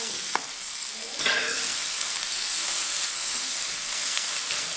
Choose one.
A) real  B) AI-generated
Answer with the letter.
B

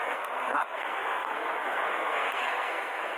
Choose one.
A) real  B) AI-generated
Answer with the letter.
B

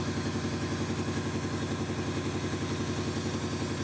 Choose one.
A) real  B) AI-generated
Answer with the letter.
A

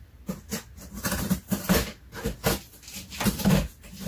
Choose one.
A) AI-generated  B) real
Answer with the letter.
B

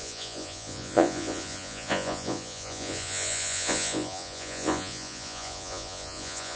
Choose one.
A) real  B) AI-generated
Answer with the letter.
B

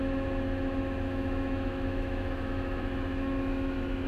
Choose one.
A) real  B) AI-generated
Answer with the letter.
B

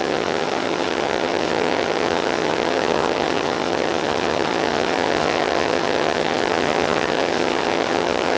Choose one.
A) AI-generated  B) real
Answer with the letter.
A